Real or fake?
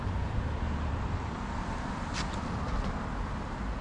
real